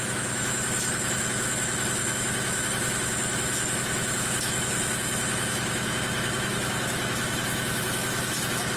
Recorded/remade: remade